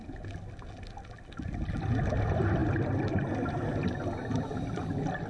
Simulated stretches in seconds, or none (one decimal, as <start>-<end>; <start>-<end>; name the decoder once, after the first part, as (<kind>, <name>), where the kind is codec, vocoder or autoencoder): none